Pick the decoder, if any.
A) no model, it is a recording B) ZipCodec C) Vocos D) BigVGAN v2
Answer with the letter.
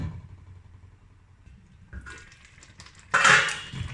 A